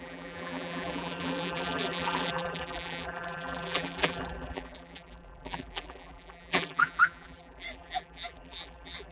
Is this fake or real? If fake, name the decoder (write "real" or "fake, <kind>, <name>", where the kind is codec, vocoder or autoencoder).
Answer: fake, vocoder, BigVGAN v2